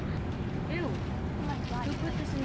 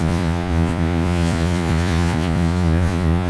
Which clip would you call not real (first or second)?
second